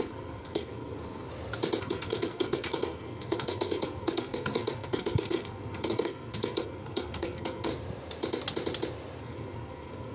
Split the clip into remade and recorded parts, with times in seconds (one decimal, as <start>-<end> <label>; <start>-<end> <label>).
0.0-1.3 remade; 1.3-1.8 recorded; 1.8-7.7 remade; 7.7-9.2 recorded; 9.2-10.1 remade